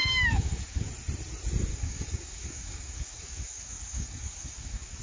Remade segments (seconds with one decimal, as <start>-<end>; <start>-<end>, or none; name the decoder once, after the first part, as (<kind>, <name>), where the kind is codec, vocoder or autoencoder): 0.0-0.9 (codec, DAC); 1.7-5.0